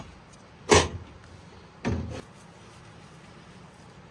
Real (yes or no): yes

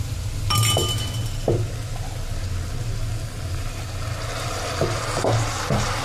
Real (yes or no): yes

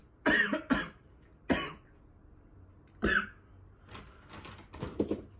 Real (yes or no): yes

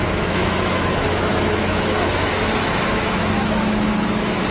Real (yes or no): no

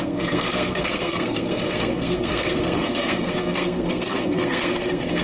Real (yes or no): no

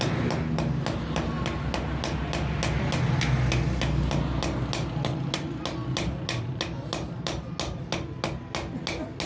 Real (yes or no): yes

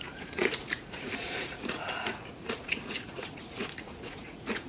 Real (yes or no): no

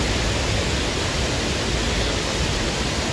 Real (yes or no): yes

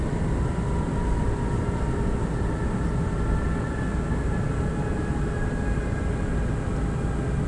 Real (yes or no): yes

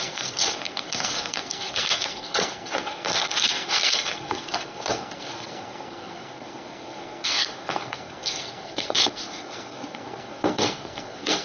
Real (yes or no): no